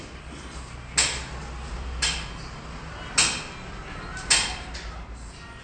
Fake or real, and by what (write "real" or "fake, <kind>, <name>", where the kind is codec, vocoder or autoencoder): real